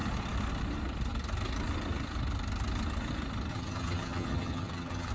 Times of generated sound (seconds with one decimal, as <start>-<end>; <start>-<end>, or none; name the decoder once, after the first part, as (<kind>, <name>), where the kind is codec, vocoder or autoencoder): 3.5-5.1 (vocoder, HiFi-GAN)